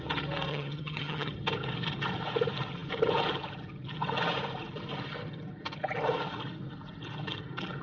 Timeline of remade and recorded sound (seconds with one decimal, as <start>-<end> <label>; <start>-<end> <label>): 0.0-0.5 recorded; 0.5-1.3 remade; 1.3-7.8 recorded